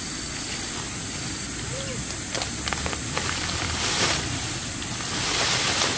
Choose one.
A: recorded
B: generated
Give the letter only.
A